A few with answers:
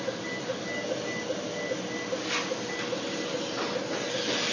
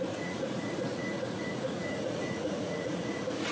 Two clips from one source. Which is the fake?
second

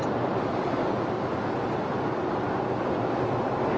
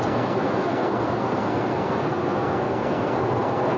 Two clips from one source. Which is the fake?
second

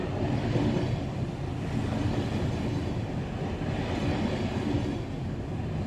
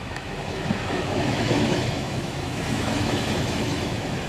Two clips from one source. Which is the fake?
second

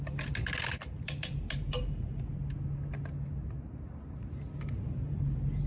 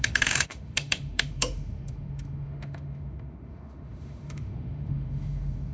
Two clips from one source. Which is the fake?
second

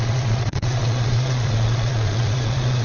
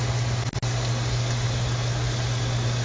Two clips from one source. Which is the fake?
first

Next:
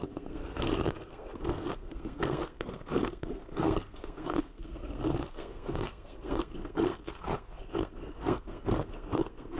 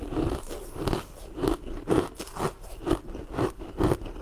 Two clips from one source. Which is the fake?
first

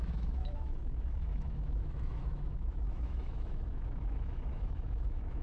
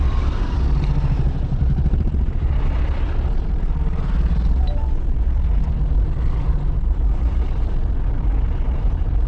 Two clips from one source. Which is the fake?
first